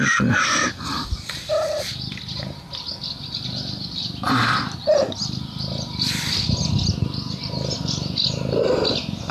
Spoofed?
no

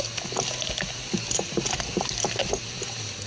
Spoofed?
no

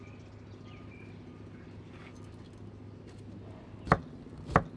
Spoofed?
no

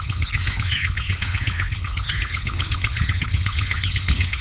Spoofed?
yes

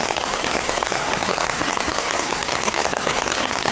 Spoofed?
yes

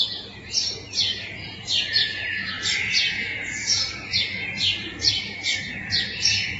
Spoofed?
yes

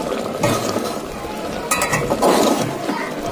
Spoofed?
no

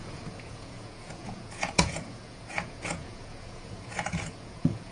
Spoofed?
yes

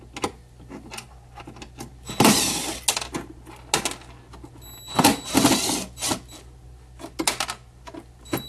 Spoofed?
no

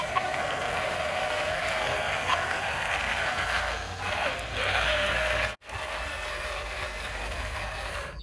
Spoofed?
yes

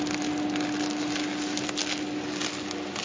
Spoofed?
no